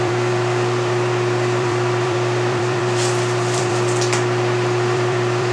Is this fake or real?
fake